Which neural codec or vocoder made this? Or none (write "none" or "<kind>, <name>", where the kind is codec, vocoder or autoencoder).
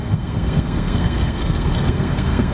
codec, SNAC